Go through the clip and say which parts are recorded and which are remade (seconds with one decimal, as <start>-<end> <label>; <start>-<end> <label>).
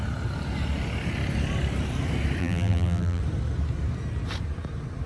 0.0-2.4 recorded; 2.4-3.2 remade; 3.2-5.1 recorded